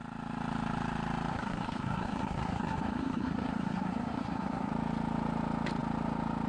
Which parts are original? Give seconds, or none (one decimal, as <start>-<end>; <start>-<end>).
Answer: 0.0-1.3; 4.7-6.5